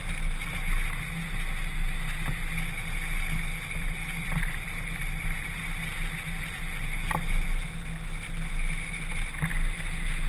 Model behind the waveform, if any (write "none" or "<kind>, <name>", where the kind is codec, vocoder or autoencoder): none